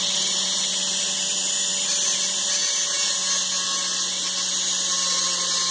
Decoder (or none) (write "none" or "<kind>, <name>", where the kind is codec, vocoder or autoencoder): none